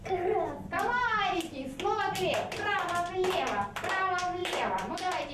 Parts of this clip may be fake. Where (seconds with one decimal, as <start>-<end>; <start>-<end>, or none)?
4.4-5.3